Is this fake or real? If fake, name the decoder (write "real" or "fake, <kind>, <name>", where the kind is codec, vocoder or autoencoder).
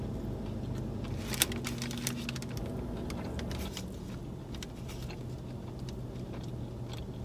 real